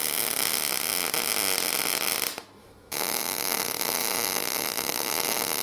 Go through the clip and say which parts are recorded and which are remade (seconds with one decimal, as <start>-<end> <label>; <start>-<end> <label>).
0.0-2.6 recorded; 2.6-5.6 remade